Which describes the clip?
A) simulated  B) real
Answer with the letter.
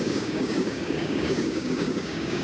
A